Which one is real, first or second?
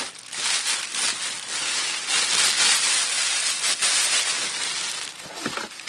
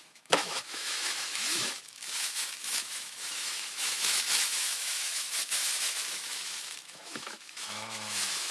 first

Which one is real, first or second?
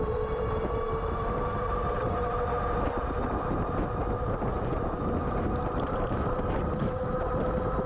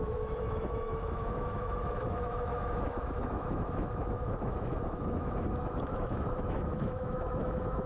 first